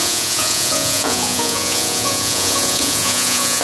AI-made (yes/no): yes